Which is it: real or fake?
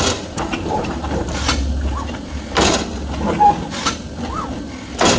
real